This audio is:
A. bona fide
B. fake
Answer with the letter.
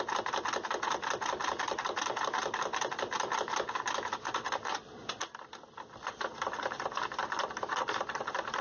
A